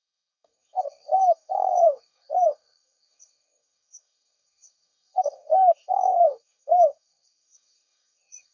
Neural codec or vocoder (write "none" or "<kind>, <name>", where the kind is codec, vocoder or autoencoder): codec, DAC